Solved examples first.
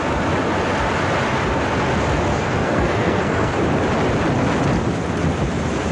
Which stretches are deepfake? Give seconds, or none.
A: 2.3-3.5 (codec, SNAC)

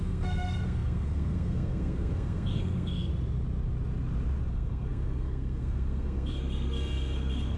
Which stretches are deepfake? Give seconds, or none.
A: 0.0-3.1 (codec, SNAC); 4.5-7.6

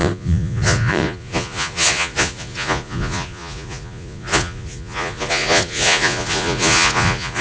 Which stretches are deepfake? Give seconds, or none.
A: 0.0-7.4 (vocoder, Vocos)

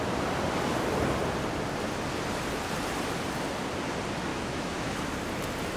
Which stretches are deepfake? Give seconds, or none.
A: 4.3-5.0 (autoencoder, DAC-VAE)

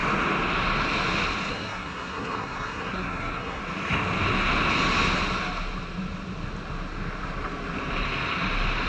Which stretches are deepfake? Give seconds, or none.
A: 1.5-3.6 (codec, SNAC)